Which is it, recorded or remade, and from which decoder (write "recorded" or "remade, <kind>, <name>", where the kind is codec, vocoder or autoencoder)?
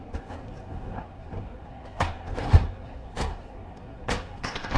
remade, codec, SNAC